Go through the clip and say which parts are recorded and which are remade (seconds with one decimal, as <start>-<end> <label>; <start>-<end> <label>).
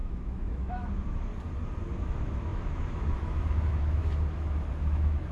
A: 0.0-1.3 remade; 1.3-2.0 recorded; 2.0-5.3 remade